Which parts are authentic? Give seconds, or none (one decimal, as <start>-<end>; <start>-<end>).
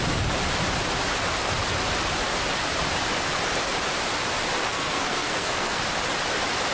0.0-4.6; 5.8-6.7